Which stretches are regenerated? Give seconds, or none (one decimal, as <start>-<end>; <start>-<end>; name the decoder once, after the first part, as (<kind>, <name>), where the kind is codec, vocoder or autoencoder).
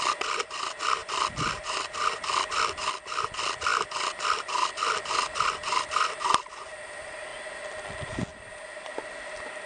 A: none